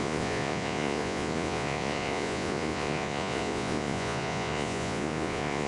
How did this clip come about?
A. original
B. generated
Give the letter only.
B